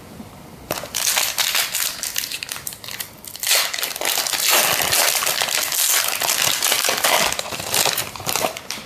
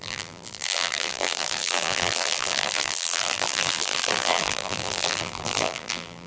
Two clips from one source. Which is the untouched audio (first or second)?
first